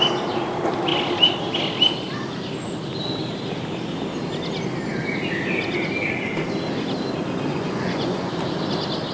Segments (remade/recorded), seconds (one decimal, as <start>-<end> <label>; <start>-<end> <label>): 0.0-7.5 recorded; 7.5-8.3 remade; 8.3-9.1 recorded